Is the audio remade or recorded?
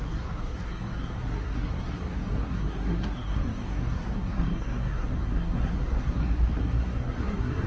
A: remade